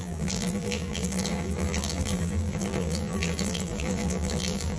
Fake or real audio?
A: fake